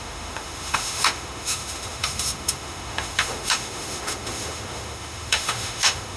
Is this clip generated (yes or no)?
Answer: yes